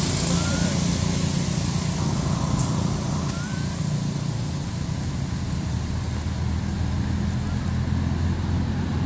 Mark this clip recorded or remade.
recorded